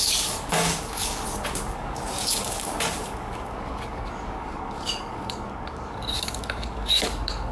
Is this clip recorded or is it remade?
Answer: remade